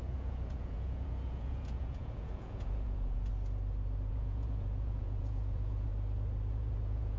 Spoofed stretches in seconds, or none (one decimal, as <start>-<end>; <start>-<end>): 0.0-3.3; 4.1-5.9; 6.5-7.2